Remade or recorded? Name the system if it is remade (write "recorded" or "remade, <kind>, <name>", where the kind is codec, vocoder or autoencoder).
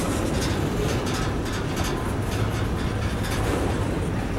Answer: recorded